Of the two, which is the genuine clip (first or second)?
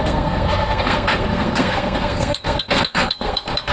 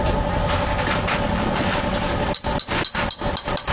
second